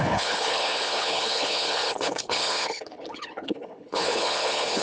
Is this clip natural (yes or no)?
no